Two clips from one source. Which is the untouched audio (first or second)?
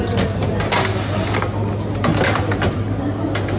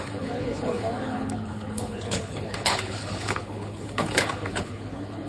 first